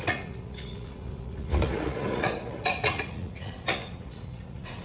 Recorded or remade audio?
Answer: remade